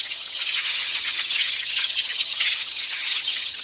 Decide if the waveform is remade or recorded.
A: remade